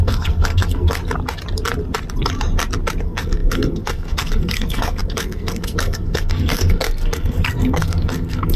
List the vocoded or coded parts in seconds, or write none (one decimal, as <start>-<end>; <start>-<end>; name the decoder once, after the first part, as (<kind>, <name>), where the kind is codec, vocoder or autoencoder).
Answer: 0.0-1.0 (codec, SNAC); 3.0-8.6